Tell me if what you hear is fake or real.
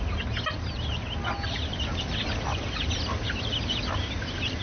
real